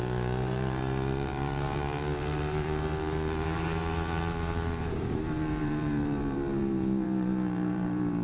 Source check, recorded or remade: remade